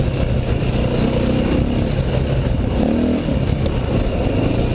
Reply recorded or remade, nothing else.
recorded